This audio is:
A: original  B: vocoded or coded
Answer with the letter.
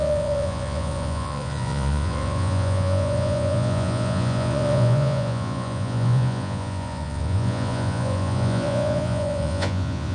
B